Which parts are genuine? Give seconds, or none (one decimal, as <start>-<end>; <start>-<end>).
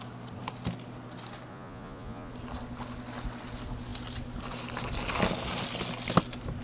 0.0-1.5; 2.3-6.6